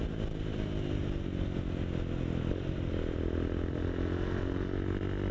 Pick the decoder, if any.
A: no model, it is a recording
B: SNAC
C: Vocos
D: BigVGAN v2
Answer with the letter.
A